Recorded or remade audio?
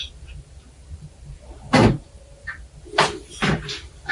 recorded